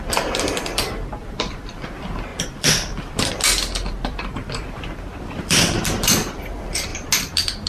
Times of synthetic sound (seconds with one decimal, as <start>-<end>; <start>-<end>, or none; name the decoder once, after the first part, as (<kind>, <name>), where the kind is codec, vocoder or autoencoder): 0.0-6.9 (vocoder, BigVGAN v2)